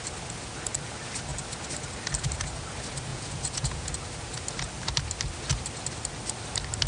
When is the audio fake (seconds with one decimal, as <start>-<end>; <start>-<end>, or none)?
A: 3.1-3.9